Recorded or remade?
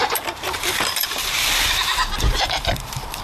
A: remade